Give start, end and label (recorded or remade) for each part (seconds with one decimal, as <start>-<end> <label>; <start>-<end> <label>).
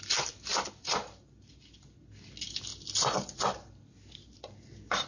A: 0.0-5.1 recorded